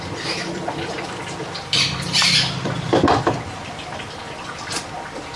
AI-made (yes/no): yes